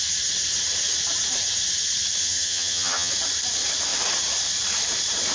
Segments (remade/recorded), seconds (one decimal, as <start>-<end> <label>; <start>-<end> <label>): 0.0-2.2 recorded; 2.2-3.1 remade; 3.1-5.3 recorded